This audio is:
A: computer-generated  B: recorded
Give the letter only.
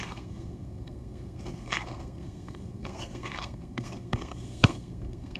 A